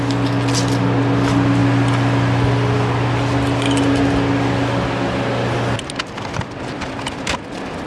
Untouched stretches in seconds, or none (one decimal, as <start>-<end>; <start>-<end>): 0.0-7.9